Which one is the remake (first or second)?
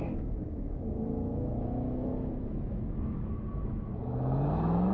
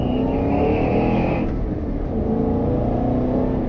first